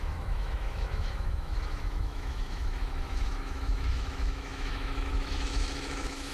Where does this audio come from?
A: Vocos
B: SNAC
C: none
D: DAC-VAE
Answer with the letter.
D